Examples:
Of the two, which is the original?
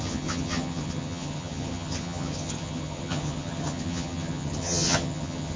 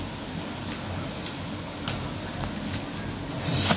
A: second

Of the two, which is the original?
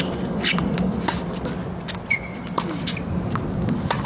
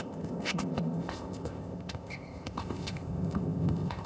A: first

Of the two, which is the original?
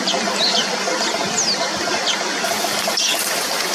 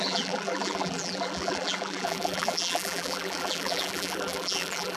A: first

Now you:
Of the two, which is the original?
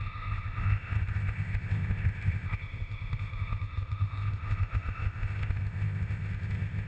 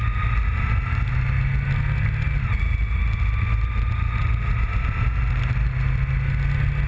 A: second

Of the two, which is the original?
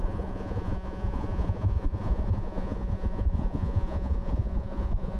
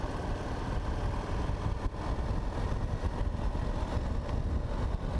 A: second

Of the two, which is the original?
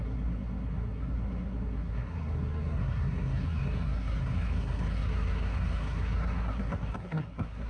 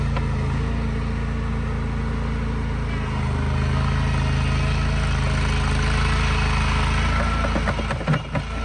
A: second